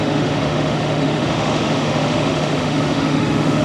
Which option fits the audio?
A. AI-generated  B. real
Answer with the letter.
A